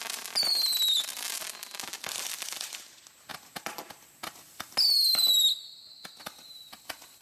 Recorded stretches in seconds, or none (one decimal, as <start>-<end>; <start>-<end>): 0.0-7.2